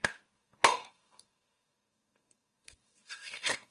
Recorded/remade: remade